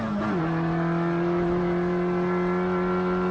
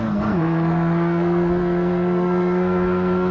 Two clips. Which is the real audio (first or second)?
first